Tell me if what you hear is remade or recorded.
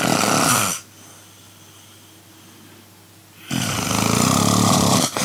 remade